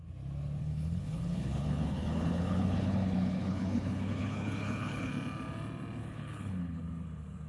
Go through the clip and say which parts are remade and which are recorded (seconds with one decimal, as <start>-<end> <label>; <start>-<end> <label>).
0.0-0.6 recorded; 0.6-5.1 remade; 5.1-6.0 recorded; 6.0-6.8 remade; 6.8-7.5 recorded